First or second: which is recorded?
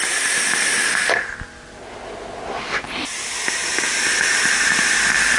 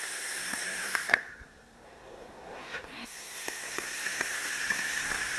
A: first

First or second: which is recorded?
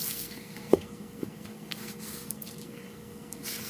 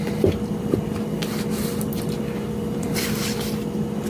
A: second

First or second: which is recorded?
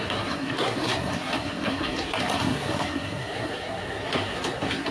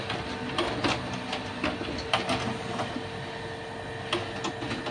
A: second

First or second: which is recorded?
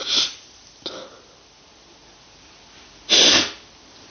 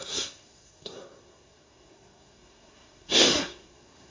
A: first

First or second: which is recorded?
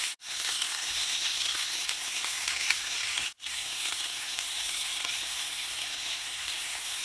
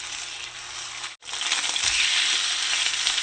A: second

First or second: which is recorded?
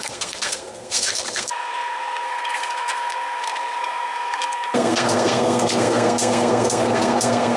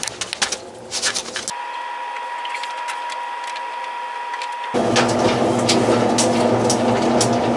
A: second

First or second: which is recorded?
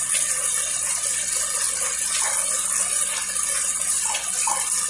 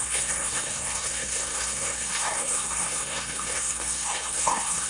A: first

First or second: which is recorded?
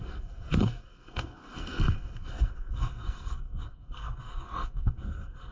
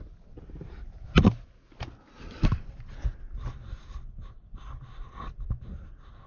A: second